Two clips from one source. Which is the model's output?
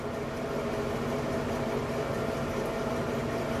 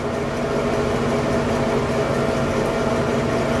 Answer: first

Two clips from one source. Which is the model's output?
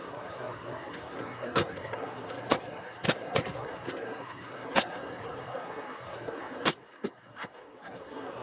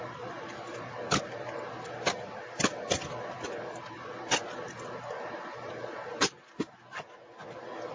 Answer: first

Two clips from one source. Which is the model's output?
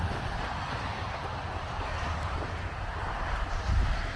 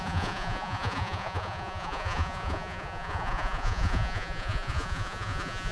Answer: second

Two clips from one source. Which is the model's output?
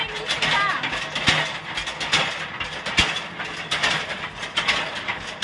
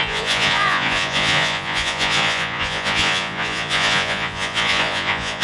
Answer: second